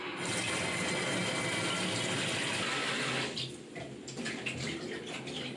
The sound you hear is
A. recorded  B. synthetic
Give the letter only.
A